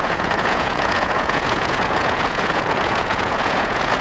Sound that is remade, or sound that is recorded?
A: remade